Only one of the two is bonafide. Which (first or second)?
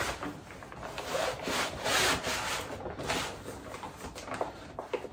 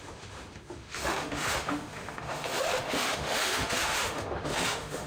first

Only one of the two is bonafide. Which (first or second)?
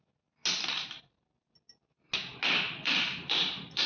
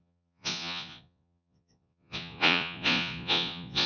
first